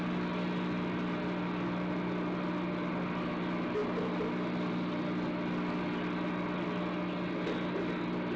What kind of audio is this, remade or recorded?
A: recorded